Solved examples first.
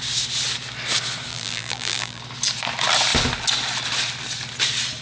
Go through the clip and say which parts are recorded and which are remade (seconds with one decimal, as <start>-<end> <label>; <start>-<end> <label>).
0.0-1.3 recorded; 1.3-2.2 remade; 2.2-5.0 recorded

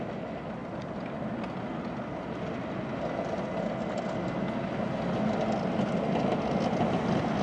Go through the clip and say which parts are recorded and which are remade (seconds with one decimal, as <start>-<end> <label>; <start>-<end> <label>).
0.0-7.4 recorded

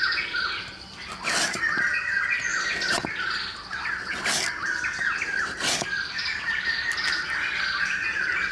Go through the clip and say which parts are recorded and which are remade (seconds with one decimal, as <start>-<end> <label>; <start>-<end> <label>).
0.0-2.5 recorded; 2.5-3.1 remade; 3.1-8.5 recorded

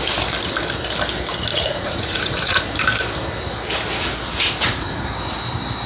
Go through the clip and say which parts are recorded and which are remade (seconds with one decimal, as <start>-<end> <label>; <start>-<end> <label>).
0.0-1.5 recorded; 1.5-2.6 remade; 2.6-4.3 recorded; 4.3-5.0 remade; 5.0-5.9 recorded